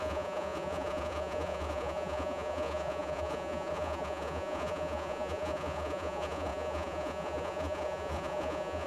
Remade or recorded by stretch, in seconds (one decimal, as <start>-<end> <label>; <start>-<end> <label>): 0.0-8.9 remade